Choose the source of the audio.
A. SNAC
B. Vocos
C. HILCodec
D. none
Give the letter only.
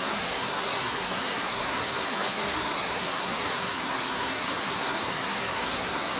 A